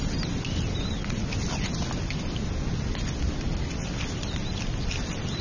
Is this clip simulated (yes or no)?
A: no